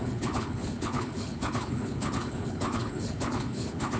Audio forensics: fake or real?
fake